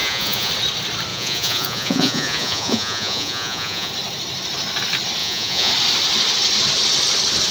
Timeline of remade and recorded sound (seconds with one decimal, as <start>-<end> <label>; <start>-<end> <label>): 0.0-0.5 remade; 0.5-1.1 recorded; 1.1-3.9 remade; 3.9-5.2 recorded; 5.2-5.7 remade; 5.7-7.5 recorded